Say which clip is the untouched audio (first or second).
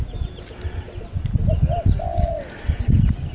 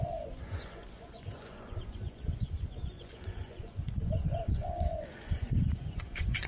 first